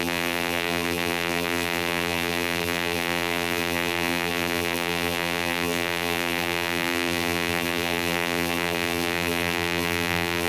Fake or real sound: fake